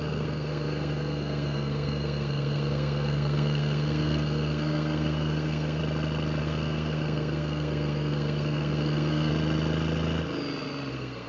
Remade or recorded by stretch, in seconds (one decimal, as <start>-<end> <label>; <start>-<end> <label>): 0.0-5.8 remade; 5.8-6.4 recorded; 6.4-9.3 remade; 9.3-10.9 recorded; 10.9-11.3 remade

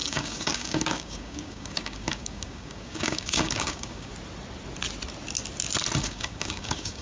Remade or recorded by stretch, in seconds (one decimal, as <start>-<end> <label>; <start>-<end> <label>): 0.0-4.1 remade; 4.1-6.0 recorded; 6.0-7.0 remade

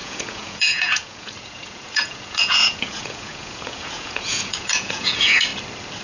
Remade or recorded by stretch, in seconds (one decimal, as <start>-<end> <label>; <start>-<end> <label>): 0.0-5.5 remade; 5.5-6.0 recorded

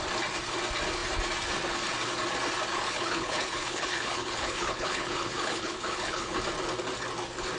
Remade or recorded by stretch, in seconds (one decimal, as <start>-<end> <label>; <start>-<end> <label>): 0.0-2.7 recorded; 2.7-6.4 remade; 6.4-7.6 recorded

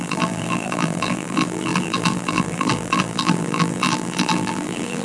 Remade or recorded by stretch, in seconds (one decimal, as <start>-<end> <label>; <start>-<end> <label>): 0.0-5.0 remade

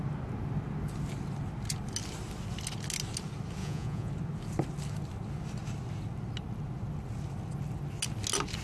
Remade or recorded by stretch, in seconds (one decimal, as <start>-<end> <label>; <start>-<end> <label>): 0.0-3.6 recorded; 3.6-4.1 remade; 4.1-8.6 recorded

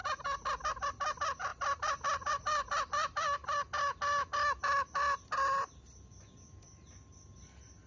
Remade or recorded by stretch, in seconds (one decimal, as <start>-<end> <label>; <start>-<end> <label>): 0.0-0.7 recorded; 0.7-3.4 remade; 3.4-6.5 recorded; 6.5-7.9 remade

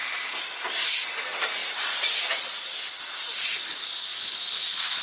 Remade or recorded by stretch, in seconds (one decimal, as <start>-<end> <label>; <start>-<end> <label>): 0.0-1.6 recorded; 1.6-2.7 remade; 2.7-4.1 recorded; 4.1-5.0 remade